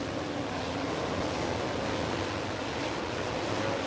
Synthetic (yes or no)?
no